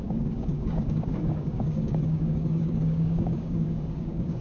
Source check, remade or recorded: remade